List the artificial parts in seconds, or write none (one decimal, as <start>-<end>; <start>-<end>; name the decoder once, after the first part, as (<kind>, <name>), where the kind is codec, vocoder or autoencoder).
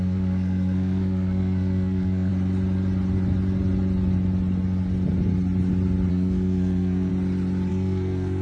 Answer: 0.0-2.3 (codec, SNAC); 6.1-7.1; 7.7-8.4